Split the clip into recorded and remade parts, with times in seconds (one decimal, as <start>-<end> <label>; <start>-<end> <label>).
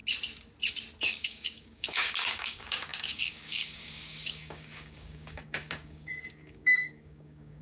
0.0-1.0 recorded; 1.0-7.6 remade